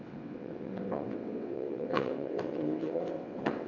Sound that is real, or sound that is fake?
fake